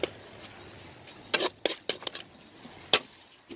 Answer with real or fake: real